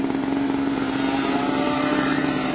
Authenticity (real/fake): real